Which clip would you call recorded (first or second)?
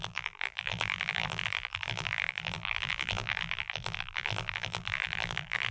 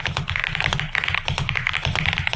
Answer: second